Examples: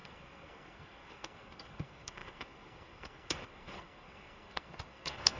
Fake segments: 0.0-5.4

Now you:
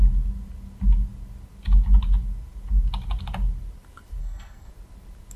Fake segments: 4.2-4.7

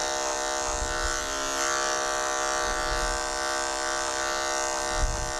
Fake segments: none